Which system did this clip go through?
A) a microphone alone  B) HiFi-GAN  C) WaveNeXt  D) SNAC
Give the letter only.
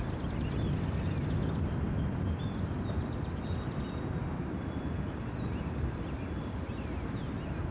A